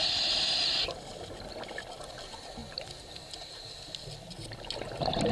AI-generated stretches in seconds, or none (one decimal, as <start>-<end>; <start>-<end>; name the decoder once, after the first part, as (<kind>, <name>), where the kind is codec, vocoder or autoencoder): none